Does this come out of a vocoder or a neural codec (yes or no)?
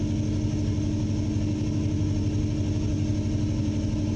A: no